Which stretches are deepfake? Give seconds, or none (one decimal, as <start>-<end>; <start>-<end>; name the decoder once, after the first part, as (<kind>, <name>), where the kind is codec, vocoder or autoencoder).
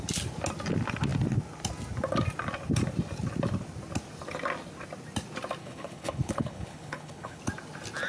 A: 5.6-7.4 (codec, HILCodec)